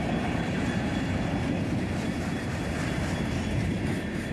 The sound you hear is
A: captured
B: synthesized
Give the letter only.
B